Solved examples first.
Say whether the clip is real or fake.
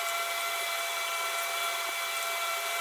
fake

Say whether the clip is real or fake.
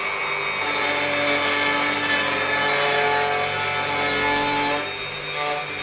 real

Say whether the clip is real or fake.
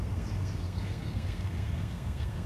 fake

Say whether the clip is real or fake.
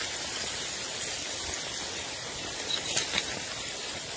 real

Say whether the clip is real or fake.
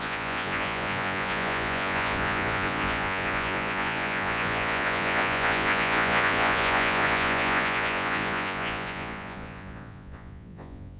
fake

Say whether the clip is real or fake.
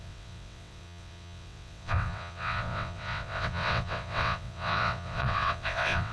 fake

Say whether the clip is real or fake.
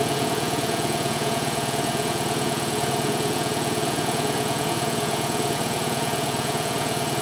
fake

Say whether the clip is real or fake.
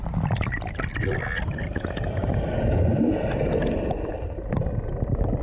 real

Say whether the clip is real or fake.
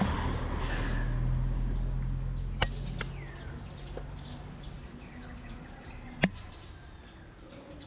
real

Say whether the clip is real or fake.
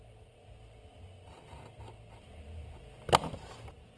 real